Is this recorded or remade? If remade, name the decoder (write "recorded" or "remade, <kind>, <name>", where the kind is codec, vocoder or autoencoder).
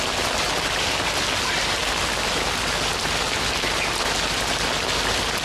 recorded